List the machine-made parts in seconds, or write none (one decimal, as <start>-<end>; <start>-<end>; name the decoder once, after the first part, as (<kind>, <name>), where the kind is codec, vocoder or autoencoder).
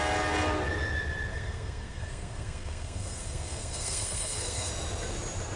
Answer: 1.3-4.7 (codec, SNAC)